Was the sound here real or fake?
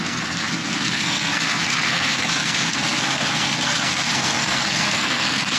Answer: fake